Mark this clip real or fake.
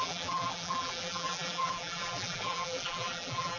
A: fake